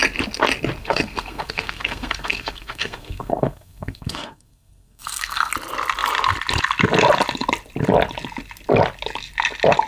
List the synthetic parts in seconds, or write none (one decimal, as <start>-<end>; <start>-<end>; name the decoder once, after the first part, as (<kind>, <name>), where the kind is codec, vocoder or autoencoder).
0.8-5.5 (codec, SNAC)